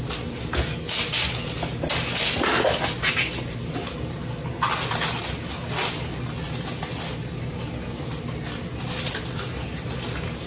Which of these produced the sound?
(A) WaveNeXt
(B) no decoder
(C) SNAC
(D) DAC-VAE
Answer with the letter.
B